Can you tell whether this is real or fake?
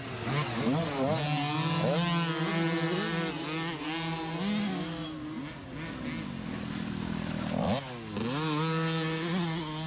real